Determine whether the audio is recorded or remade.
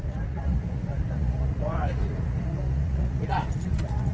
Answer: remade